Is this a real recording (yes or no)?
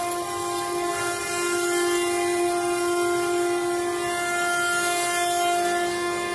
yes